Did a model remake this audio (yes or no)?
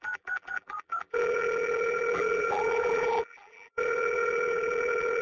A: yes